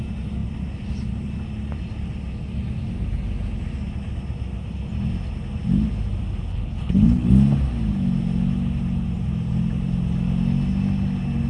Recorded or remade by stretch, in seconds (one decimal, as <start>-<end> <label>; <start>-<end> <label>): 0.0-6.5 recorded; 6.5-7.3 remade; 7.3-11.5 recorded

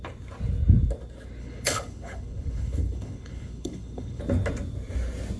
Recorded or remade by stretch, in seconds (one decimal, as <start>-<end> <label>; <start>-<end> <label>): 0.0-1.4 recorded; 1.4-4.2 remade; 4.2-5.4 recorded

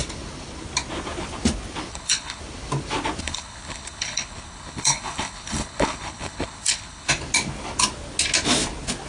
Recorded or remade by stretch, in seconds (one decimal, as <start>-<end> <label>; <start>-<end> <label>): 0.0-1.9 recorded; 1.9-2.4 remade; 2.4-3.2 recorded; 3.2-7.1 remade; 7.1-9.1 recorded

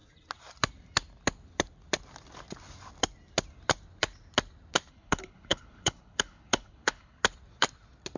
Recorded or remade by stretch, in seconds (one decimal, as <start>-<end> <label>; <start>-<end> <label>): 0.0-4.9 recorded; 4.9-7.2 remade; 7.2-8.2 recorded